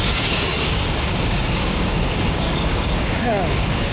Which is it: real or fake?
fake